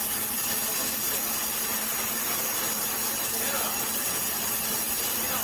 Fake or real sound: real